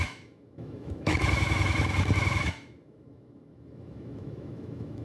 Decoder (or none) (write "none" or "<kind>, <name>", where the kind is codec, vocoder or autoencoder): autoencoder, DAC-VAE